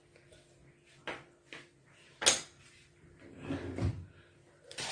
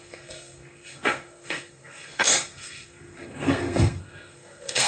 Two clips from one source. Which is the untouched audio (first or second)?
first